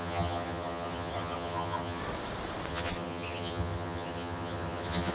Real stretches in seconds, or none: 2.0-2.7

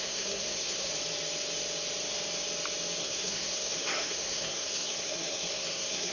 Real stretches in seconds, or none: 0.9-3.0

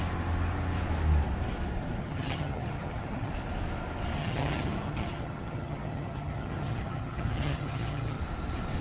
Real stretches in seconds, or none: 0.0-2.0; 3.3-4.2; 8.2-8.8

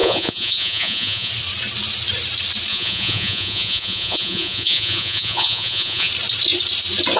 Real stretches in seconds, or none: 1.3-2.7; 6.1-7.2

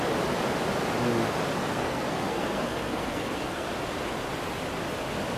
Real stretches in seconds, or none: 0.0-1.6; 3.7-5.4

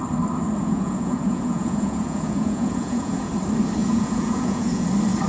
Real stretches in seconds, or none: 0.0-0.6; 3.3-3.8; 4.8-5.3